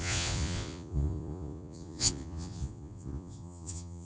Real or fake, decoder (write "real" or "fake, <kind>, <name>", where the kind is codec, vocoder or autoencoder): fake, vocoder, Vocos